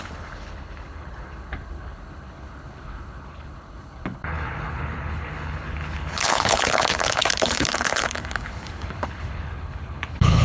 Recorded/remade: remade